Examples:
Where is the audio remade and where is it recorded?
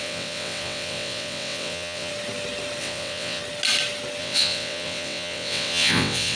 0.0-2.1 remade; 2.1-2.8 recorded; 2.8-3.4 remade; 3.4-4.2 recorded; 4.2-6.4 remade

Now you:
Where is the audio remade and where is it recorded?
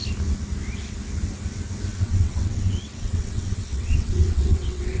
0.0-1.9 recorded; 1.9-5.0 remade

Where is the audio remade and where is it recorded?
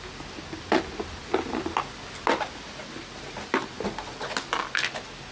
0.0-5.3 recorded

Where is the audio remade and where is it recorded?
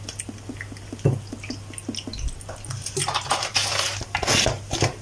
0.0-5.0 recorded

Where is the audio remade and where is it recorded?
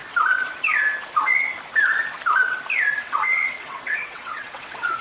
0.0-3.0 recorded; 3.0-5.0 remade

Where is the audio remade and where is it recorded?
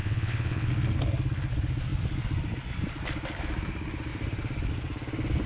0.0-0.7 remade; 0.7-5.5 recorded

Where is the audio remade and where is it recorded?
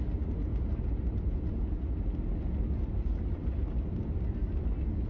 0.0-5.1 recorded